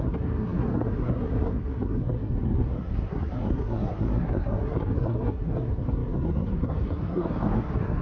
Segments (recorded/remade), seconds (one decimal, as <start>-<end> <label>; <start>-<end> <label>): 0.0-8.0 remade